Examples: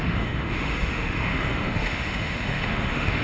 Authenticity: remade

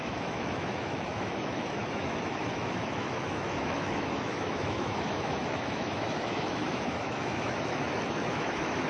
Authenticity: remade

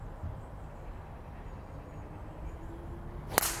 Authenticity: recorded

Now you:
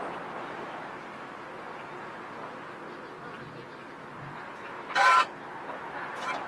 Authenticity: recorded